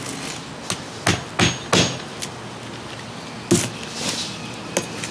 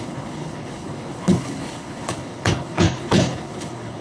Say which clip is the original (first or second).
first